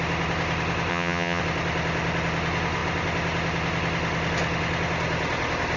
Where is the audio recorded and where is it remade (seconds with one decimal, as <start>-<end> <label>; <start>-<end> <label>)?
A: 0.0-0.9 recorded; 0.9-1.4 remade; 1.4-5.8 recorded